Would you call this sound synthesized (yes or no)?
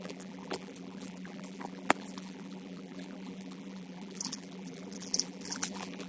yes